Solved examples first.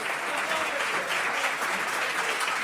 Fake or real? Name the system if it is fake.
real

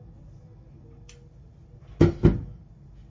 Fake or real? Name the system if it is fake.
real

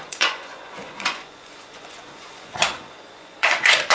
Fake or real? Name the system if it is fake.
fake, vocoder, Vocos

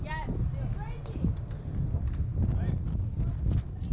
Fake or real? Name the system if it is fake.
real